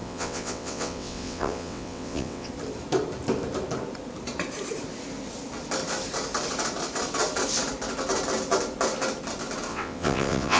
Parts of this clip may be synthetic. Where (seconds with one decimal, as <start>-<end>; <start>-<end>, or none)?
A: 0.0-2.5; 9.7-10.6